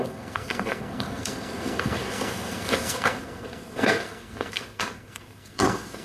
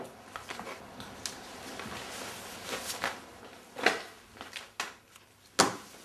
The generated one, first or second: first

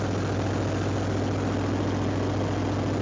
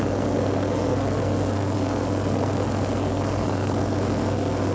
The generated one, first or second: second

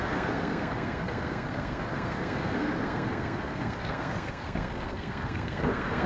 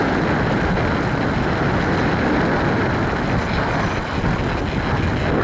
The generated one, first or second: first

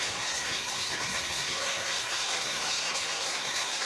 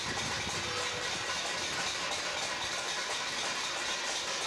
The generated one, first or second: first